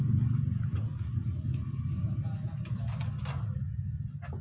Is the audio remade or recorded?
recorded